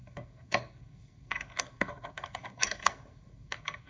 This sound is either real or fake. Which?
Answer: fake